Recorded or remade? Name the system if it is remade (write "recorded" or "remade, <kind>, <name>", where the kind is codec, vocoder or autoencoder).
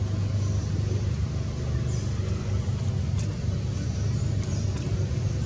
recorded